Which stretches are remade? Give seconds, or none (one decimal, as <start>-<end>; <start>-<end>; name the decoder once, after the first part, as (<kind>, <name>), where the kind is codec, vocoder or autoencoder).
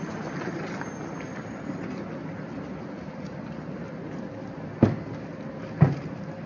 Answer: none